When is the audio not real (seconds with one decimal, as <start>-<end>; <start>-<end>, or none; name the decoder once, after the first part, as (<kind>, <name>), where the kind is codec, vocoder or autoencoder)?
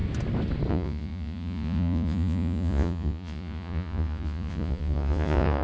0.7-5.6 (vocoder, Vocos)